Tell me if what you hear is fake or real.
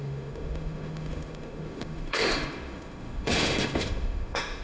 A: fake